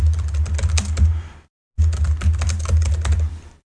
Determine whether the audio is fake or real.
real